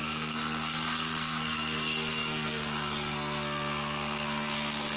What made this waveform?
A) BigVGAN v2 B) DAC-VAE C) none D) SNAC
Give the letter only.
D